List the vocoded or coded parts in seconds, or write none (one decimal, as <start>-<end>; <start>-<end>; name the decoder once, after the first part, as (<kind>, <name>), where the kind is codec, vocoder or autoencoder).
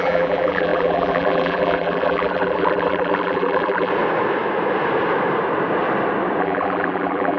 0.0-3.9 (vocoder, BigVGAN v2); 6.4-7.4